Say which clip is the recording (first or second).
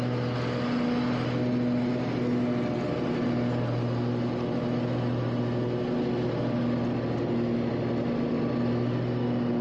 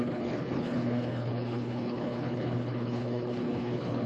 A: first